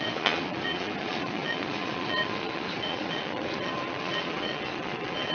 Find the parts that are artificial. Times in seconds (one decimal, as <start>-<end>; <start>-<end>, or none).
0.0-5.3